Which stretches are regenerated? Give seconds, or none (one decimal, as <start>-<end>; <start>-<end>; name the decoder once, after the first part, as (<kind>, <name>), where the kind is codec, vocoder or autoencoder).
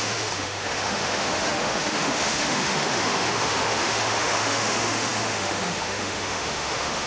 0.0-7.1 (autoencoder, DAC-VAE)